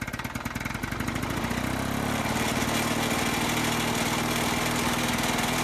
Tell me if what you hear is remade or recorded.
recorded